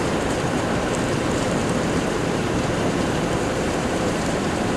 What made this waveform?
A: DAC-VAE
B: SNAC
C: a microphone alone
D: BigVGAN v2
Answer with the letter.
D